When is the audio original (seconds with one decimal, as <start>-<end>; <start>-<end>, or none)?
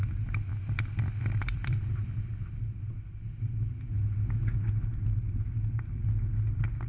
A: 0.0-0.5; 2.8-6.9